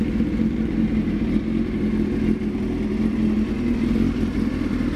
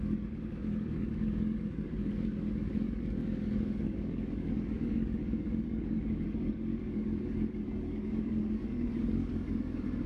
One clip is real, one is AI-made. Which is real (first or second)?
first